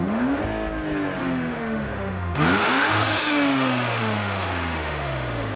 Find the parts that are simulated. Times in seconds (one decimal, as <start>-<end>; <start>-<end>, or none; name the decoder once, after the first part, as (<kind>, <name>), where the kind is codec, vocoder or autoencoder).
0.0-0.4 (autoencoder, DAC-VAE); 1.2-5.6